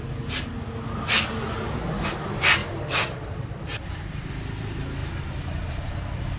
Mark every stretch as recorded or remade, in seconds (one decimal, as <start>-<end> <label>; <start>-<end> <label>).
0.0-6.4 recorded